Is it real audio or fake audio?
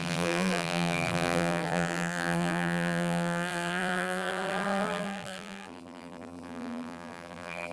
fake